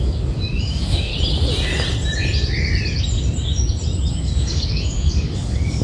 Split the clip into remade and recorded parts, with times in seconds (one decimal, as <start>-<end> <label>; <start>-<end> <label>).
0.0-1.1 remade; 1.1-4.1 recorded; 4.1-5.8 remade